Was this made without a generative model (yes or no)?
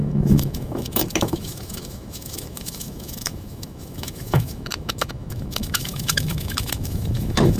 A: no